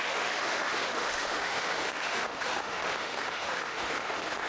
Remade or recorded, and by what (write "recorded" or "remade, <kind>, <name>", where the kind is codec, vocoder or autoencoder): remade, autoencoder, DAC-VAE